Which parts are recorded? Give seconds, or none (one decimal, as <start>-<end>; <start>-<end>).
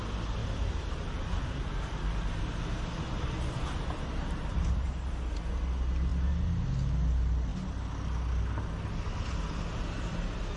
0.0-0.4; 5.5-10.6